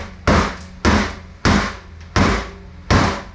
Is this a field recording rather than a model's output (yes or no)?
yes